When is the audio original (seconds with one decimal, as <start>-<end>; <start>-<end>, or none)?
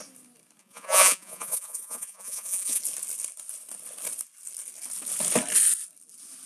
0.0-0.6; 2.8-6.5